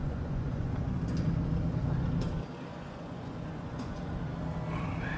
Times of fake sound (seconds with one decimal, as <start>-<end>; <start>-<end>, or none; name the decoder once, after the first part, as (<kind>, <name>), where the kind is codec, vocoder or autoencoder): 0.0-1.0 (vocoder, Vocos); 2.7-4.2